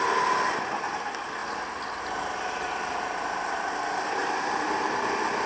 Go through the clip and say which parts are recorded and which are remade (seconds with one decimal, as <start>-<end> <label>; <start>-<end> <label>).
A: 0.0-5.5 recorded